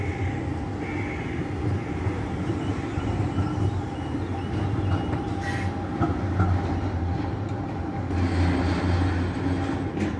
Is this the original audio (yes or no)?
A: yes